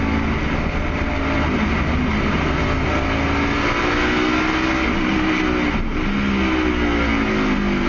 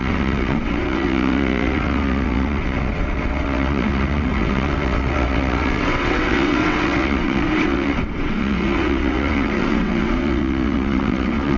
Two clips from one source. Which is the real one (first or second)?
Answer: first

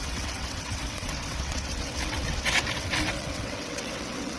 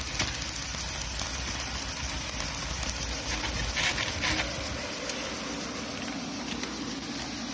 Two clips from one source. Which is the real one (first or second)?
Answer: second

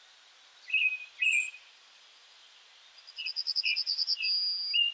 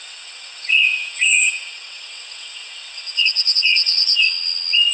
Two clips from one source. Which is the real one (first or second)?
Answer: first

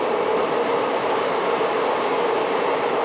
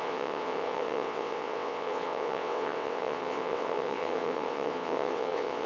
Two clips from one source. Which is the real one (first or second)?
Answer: first